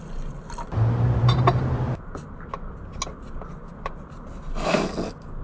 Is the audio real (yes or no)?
yes